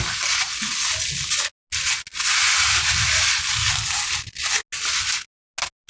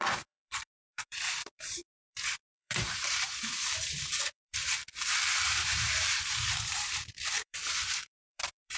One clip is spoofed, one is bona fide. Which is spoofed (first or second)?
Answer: second